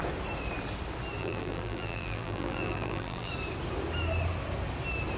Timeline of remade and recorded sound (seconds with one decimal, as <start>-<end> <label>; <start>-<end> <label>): 0.0-1.2 recorded; 1.2-3.3 remade; 3.3-5.2 recorded